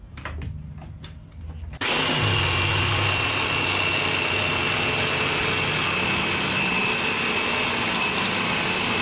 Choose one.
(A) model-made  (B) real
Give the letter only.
B